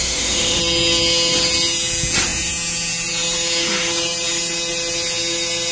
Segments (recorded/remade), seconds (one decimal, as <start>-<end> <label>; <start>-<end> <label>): 0.0-0.6 remade; 0.6-5.7 recorded